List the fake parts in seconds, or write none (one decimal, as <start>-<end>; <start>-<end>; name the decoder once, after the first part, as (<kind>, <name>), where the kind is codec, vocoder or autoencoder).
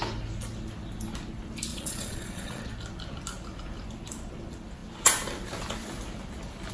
1.7-2.6 (vocoder, Vocos)